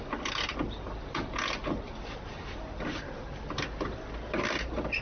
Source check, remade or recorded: recorded